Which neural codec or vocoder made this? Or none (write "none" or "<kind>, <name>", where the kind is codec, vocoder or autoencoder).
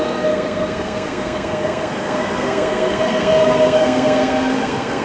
codec, SNAC